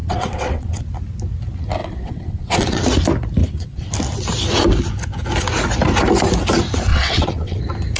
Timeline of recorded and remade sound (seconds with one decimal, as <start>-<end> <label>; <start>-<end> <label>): 0.0-0.8 remade; 0.8-1.8 recorded; 1.8-2.8 remade; 2.8-3.4 recorded; 3.4-3.9 remade; 3.9-6.9 recorded; 6.9-7.6 remade; 7.6-8.0 recorded